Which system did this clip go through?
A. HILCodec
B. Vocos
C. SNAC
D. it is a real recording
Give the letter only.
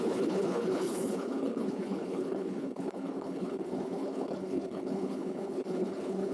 A